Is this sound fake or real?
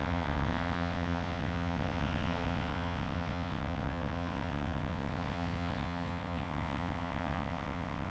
fake